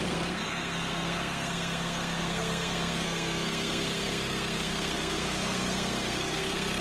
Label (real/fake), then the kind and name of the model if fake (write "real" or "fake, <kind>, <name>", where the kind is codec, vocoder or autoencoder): fake, codec, SNAC